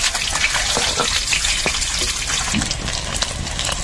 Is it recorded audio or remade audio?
recorded